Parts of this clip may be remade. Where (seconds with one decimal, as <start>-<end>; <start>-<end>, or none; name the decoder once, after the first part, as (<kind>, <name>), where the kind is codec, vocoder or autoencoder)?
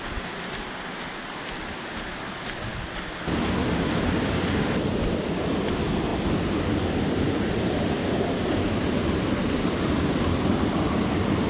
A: none